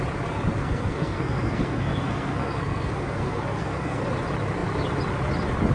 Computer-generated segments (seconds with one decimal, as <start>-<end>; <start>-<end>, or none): 0.6-4.0